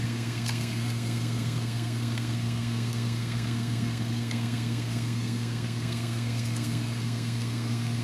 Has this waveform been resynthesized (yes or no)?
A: yes